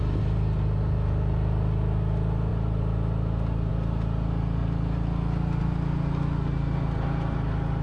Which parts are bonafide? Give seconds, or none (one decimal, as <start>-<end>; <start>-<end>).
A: 0.0-7.8